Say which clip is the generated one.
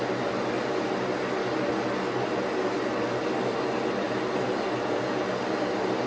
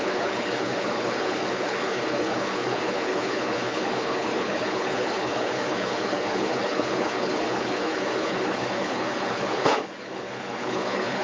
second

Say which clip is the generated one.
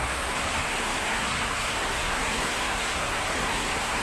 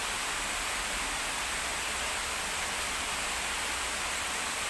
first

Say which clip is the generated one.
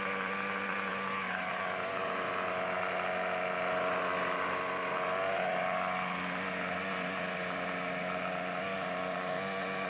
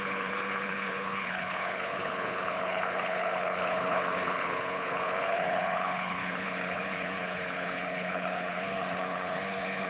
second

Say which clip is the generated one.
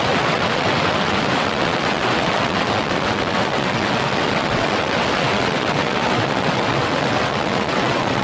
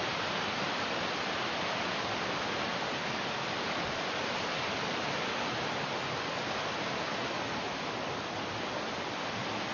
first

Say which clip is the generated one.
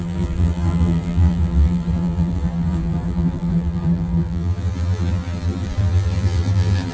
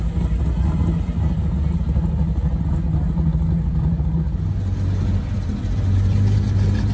first